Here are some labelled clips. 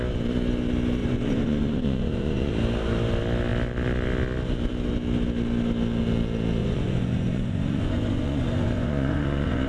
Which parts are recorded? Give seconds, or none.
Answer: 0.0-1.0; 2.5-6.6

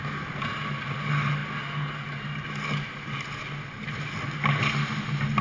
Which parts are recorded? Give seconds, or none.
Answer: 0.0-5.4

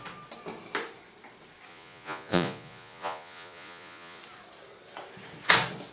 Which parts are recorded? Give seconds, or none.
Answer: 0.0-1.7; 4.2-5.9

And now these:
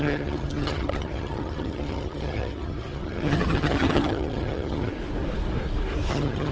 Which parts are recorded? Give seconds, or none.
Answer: 4.9-6.1